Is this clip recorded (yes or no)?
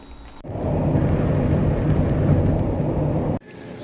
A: yes